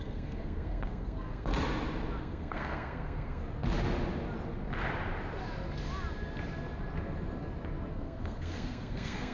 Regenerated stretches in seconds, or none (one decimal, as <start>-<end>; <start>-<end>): 0.0-1.5; 2.2-3.4; 7.9-9.3